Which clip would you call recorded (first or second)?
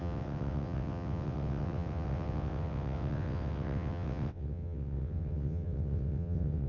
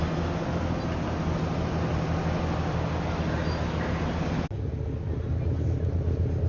second